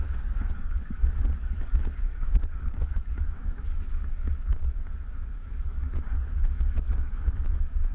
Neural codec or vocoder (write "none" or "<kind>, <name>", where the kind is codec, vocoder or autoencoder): codec, DAC